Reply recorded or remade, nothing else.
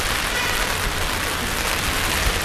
recorded